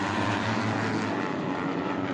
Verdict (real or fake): fake